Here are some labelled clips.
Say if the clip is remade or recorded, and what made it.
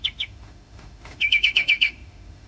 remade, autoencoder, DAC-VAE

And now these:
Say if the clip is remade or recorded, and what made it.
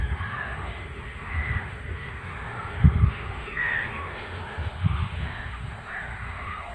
remade, autoencoder, DAC-VAE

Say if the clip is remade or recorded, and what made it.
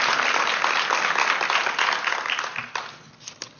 recorded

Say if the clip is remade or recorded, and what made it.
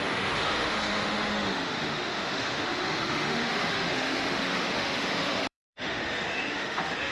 remade, autoencoder, DAC-VAE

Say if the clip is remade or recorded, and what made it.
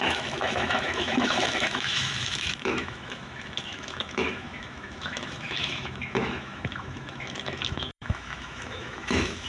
remade, autoencoder, DAC-VAE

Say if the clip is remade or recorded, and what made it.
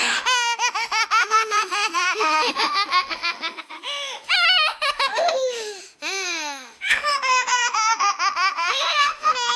remade, autoencoder, DAC-VAE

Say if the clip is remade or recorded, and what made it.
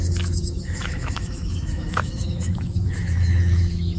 remade, autoencoder, DAC-VAE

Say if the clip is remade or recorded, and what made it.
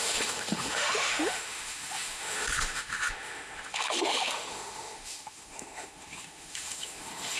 remade, autoencoder, DAC-VAE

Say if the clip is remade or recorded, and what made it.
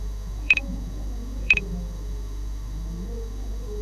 remade, autoencoder, DAC-VAE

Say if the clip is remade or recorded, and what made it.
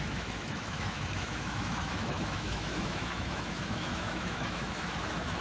remade, autoencoder, DAC-VAE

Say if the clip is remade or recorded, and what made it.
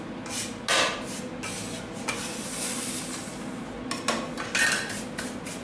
recorded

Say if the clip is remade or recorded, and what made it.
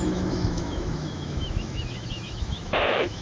remade, autoencoder, DAC-VAE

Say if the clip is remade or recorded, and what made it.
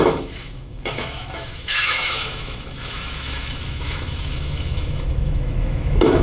remade, autoencoder, DAC-VAE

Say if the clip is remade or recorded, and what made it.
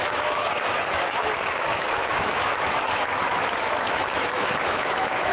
remade, autoencoder, DAC-VAE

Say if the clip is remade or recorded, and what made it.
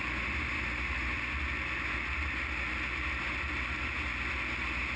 recorded